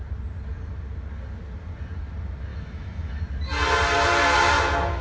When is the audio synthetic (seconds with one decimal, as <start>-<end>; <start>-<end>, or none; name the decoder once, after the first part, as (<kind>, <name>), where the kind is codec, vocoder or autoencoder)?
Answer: 2.5-3.2 (autoencoder, DAC-VAE)